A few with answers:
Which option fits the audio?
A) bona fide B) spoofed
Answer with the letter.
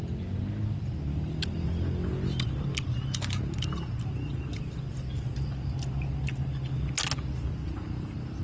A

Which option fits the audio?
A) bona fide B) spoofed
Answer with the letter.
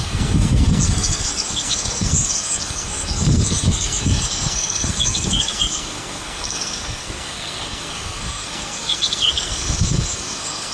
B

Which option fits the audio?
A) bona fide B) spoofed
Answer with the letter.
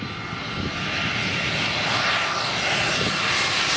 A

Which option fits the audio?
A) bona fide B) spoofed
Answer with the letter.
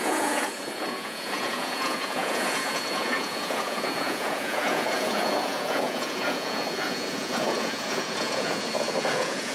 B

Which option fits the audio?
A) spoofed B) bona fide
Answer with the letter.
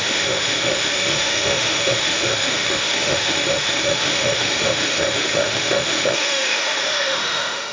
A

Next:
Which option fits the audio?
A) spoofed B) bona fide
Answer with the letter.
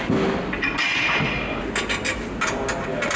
B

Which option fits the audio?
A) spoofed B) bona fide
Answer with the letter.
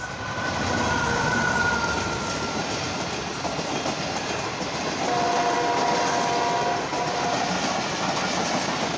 B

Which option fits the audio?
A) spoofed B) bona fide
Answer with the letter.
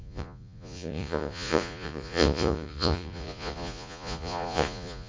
A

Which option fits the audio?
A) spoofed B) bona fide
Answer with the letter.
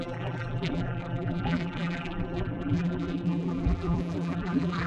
A